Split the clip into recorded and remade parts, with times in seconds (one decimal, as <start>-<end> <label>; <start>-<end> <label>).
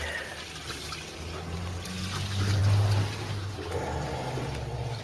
0.0-5.0 recorded